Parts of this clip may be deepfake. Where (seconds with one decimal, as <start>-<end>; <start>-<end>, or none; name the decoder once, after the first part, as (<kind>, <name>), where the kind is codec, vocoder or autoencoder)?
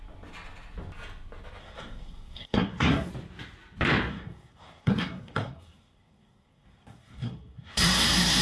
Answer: 1.6-3.1 (codec, SNAC); 4.1-8.4